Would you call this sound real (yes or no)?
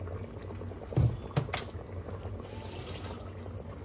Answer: yes